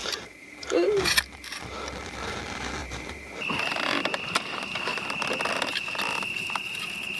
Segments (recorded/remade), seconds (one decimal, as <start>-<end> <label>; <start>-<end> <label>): 0.0-1.2 remade; 1.2-2.8 recorded; 2.8-4.0 remade; 4.0-7.2 recorded